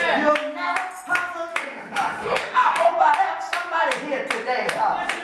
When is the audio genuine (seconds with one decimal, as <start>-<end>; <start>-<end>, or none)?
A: 0.0-1.5; 2.9-5.2